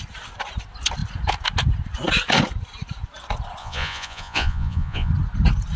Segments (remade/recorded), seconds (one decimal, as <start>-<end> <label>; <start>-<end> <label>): 0.0-3.6 recorded; 3.6-5.1 remade; 5.1-5.8 recorded